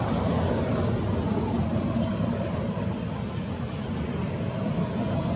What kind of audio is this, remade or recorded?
recorded